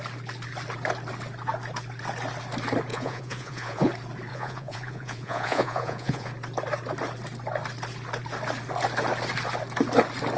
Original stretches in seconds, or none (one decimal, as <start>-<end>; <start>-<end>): 0.0-2.9; 3.9-4.3; 6.3-10.4